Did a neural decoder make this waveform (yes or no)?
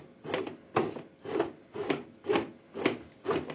no